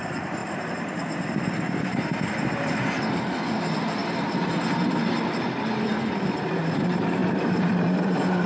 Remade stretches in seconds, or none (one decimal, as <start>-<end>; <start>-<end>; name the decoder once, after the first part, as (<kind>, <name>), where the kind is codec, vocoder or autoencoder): 0.0-0.4 (vocoder, BigVGAN v2); 3.6-4.0; 6.4-8.5